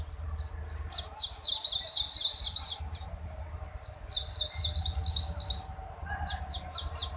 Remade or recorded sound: recorded